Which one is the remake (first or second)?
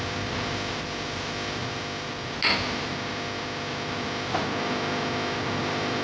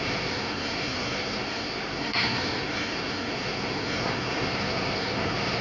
second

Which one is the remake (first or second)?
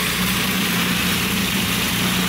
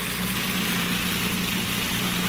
first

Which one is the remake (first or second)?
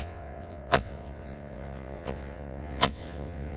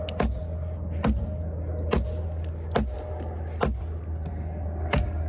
first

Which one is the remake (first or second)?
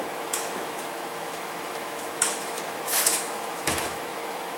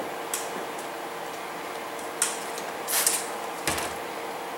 first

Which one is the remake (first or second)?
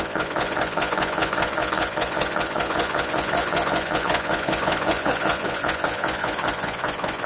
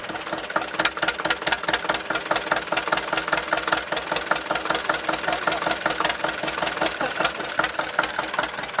first